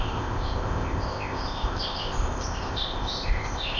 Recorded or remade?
remade